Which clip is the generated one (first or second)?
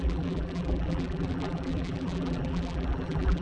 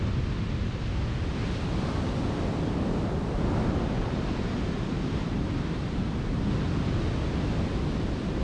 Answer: first